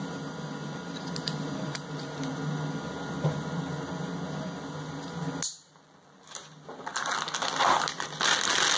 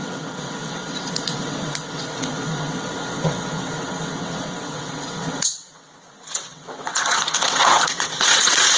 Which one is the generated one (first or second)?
second